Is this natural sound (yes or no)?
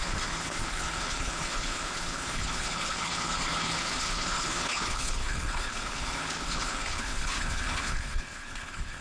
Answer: no